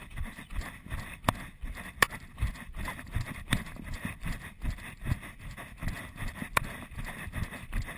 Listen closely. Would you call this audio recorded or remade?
recorded